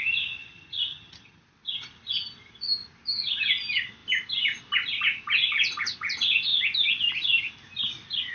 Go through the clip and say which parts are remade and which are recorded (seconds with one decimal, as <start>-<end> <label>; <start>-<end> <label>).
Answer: 0.0-0.4 recorded; 0.4-1.4 remade; 1.4-8.3 recorded